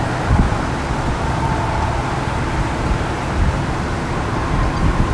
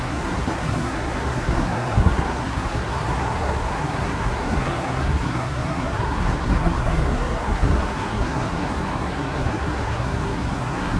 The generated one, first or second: second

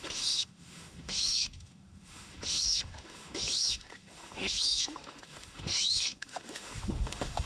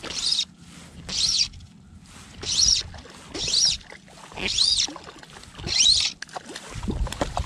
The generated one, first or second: first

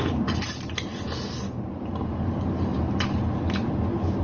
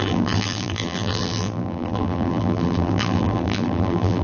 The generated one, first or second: second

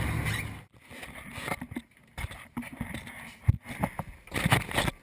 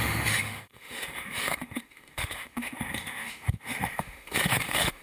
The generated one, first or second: second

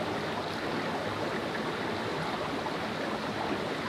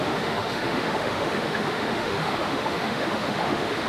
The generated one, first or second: second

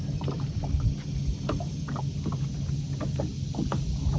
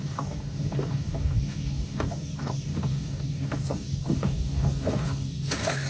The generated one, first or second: second